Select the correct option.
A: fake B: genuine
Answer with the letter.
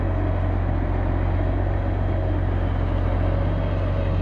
B